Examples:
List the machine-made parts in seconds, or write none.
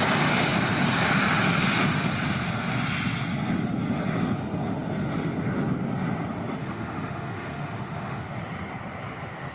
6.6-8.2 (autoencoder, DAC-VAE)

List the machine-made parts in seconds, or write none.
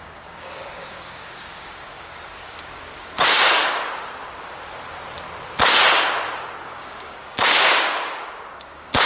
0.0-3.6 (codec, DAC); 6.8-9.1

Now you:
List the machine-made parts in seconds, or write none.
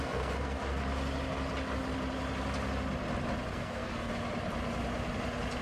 0.0-0.8 (codec, SNAC); 3.5-4.1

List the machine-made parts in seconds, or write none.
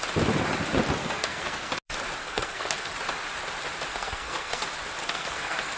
1.0-1.7 (codec, SNAC); 2.2-2.9; 3.9-4.6; 5.0-5.8